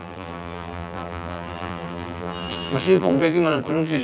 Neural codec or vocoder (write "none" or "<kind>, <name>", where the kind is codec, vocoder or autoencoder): vocoder, BigVGAN v2